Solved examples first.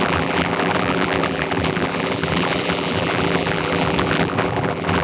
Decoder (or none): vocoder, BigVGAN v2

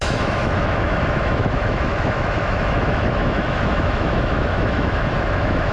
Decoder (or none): autoencoder, DAC-VAE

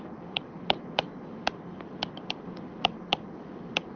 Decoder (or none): none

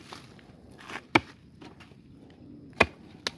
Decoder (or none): none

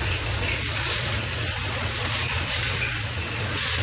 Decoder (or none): vocoder, Vocos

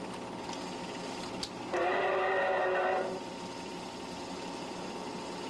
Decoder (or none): none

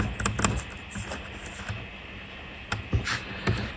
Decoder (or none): none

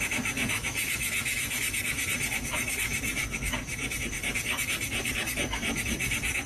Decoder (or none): autoencoder, DAC-VAE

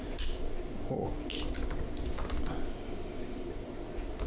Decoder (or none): none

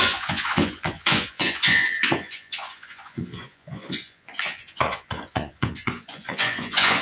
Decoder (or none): vocoder, Vocos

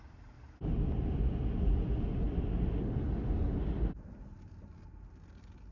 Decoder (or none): none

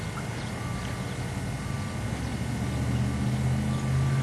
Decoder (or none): none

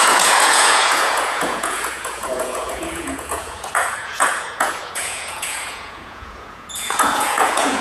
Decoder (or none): vocoder, Vocos